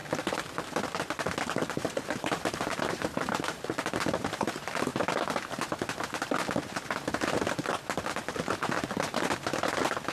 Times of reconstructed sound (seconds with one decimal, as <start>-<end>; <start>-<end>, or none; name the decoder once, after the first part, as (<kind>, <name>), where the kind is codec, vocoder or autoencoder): 0.0-4.9 (vocoder, BigVGAN v2)